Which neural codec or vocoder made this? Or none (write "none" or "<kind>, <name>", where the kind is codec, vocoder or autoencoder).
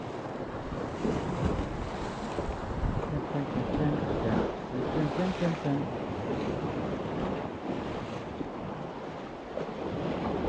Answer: none